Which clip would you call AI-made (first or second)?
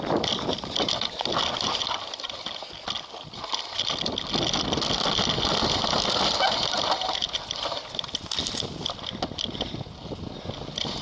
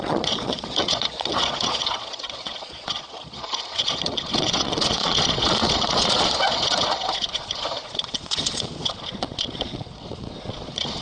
second